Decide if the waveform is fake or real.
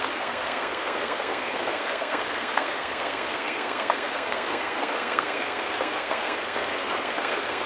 fake